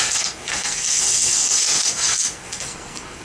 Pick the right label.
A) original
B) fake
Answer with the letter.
B